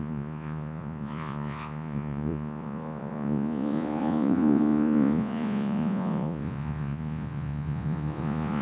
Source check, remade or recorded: remade